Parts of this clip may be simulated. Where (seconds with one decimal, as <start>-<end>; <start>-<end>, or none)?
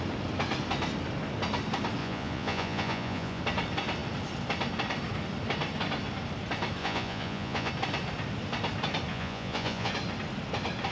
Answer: 2.0-3.4; 6.8-7.7; 9.1-9.9